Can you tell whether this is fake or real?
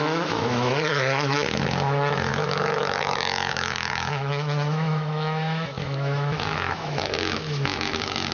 fake